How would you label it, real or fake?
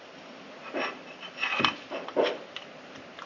real